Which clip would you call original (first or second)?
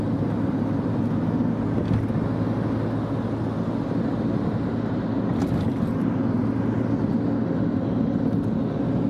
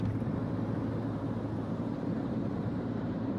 first